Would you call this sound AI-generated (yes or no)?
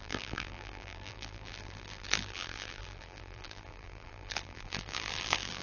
yes